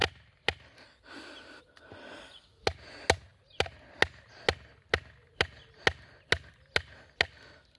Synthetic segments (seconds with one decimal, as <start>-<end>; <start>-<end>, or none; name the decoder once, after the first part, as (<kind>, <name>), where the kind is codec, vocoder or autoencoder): none